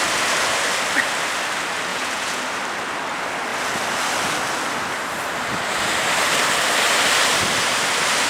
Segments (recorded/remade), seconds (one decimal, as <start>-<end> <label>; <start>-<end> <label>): 0.0-1.9 recorded; 1.9-2.4 remade; 2.4-8.3 recorded